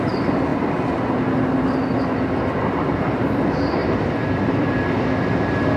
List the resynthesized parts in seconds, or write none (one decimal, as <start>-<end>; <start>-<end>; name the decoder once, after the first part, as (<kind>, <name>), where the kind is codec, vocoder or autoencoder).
3.8-4.7 (vocoder, BigVGAN v2)